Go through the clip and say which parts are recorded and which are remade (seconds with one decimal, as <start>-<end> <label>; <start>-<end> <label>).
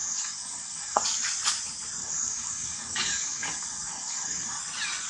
0.0-1.0 remade; 1.0-2.0 recorded; 2.0-4.6 remade; 4.6-5.1 recorded